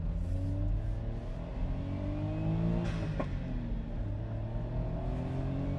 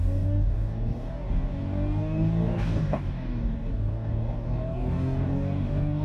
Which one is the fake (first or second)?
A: second